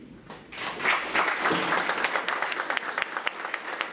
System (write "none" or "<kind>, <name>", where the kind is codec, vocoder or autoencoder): none